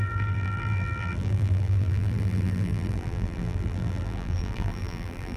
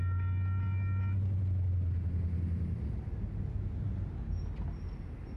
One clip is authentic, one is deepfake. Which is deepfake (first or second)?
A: first